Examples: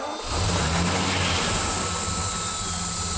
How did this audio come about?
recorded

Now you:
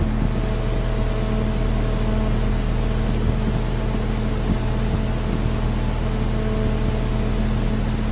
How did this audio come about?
recorded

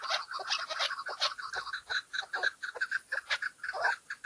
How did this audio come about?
remade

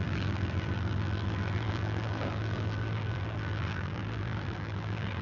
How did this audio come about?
remade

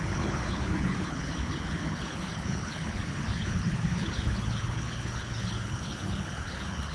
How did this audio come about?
remade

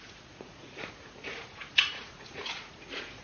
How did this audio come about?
remade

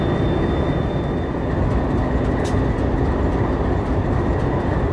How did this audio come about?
recorded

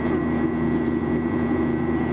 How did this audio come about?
remade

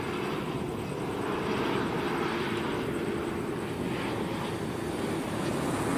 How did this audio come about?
recorded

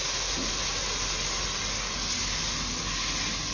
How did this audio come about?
recorded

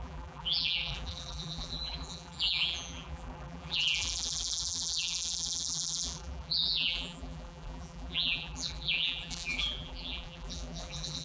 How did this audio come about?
remade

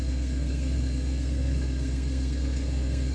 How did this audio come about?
remade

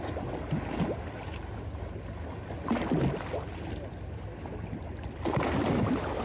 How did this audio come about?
recorded